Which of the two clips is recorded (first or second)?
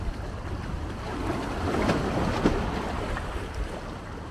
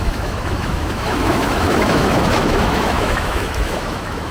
first